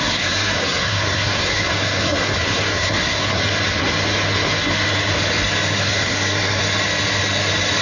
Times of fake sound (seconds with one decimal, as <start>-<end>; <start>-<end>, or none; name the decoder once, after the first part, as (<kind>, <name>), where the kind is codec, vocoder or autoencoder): 0.0-3.4 (codec, SNAC); 5.8-6.6